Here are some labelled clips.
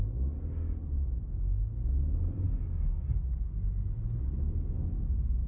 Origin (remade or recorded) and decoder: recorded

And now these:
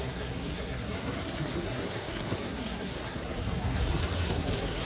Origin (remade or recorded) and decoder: remade, codec, SNAC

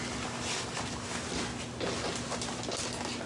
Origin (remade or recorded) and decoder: recorded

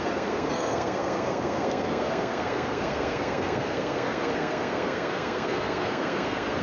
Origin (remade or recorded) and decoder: remade, codec, SNAC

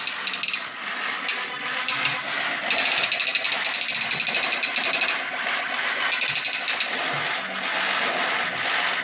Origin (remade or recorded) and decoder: recorded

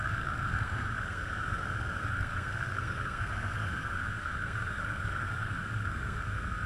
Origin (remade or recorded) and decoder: remade, codec, SNAC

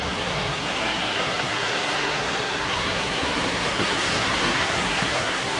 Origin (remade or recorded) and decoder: remade, codec, SNAC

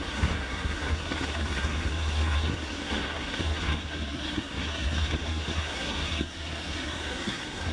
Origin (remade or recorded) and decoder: remade, codec, SNAC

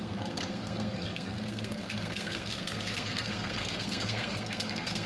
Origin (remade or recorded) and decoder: remade, codec, SNAC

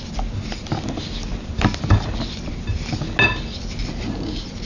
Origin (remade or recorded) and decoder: recorded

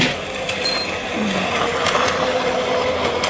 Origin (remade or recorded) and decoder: recorded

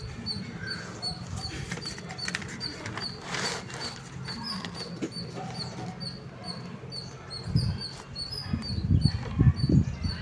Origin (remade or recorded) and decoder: recorded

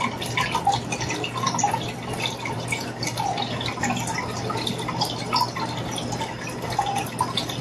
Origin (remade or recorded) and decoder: recorded